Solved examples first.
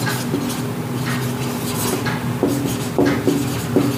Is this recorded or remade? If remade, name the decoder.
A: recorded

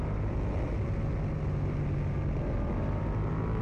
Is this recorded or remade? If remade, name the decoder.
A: recorded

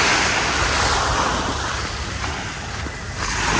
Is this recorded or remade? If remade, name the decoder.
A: recorded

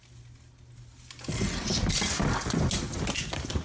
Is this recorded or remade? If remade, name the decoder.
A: recorded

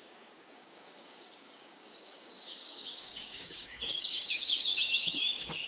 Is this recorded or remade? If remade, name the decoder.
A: remade, codec, DAC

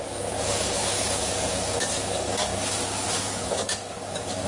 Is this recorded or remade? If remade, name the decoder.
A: remade, codec, DAC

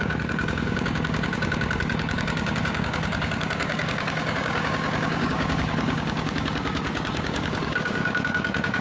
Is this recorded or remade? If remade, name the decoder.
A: remade, codec, DAC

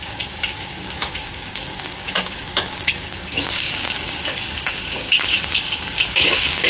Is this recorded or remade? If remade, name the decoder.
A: remade, codec, DAC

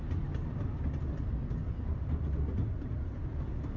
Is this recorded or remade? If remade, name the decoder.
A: recorded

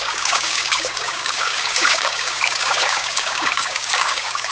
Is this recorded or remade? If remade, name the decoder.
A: remade, codec, DAC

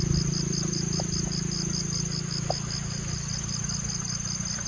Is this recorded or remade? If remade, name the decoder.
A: recorded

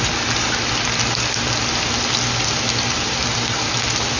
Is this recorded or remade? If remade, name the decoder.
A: recorded